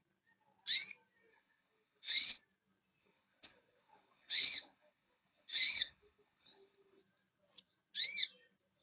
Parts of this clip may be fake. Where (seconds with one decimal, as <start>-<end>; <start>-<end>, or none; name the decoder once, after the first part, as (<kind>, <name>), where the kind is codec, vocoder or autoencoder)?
1.3-2.4 (codec, HILCodec); 3.0-7.0